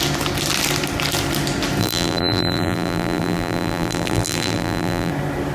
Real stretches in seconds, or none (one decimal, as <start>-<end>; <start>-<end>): 0.0-1.8; 5.1-5.5